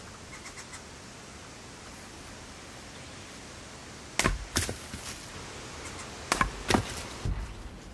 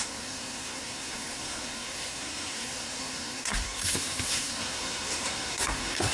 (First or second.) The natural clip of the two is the first